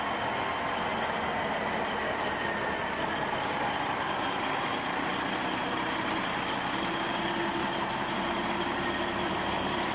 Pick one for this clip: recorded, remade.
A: recorded